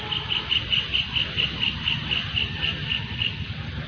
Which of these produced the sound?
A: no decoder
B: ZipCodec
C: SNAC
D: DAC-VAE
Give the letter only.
A